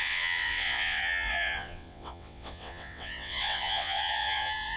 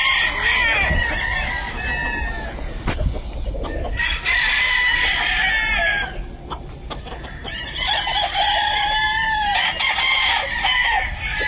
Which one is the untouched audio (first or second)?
second